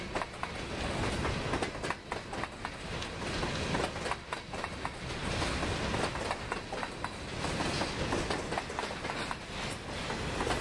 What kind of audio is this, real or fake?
real